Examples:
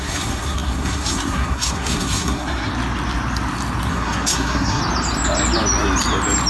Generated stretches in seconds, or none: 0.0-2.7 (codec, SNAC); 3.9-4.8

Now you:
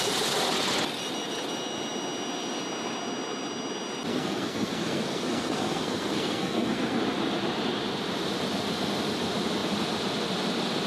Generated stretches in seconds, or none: 4.1-7.0 (codec, SNAC)

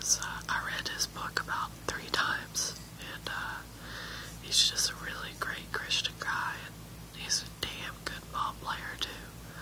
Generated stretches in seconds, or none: none

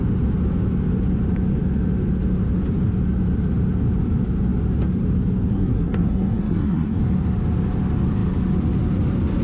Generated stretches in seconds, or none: 5.5-7.0 (codec, SNAC)